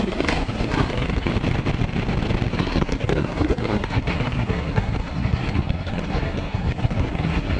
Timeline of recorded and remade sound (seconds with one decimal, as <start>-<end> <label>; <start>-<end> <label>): 0.0-1.3 remade; 1.3-2.5 recorded; 2.5-7.6 remade